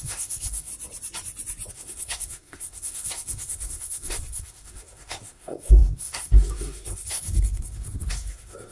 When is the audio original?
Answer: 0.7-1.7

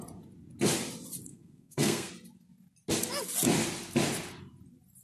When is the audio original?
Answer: 0.0-1.3; 2.1-5.0

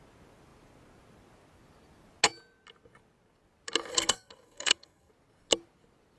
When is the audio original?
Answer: 0.0-3.9; 5.1-6.2

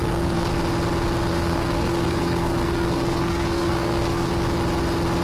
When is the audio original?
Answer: 0.5-1.3; 4.3-5.2